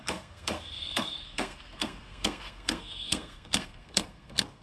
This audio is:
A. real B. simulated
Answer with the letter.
B